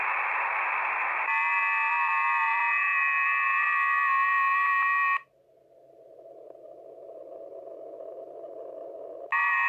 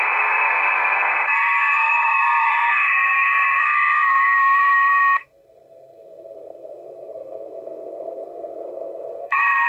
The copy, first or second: second